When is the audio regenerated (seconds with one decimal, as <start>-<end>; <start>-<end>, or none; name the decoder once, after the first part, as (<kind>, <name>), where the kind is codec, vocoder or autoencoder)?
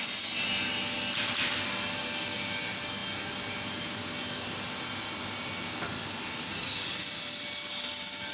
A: none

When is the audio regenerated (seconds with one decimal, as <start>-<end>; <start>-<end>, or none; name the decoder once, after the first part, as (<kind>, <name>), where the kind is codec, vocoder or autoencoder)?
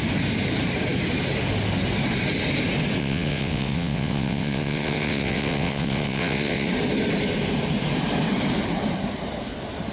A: 3.0-6.7 (vocoder, WaveNeXt)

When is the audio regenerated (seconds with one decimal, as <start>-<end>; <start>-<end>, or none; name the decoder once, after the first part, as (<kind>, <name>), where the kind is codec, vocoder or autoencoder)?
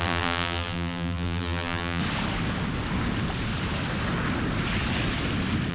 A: 0.0-2.0 (vocoder, BigVGAN v2)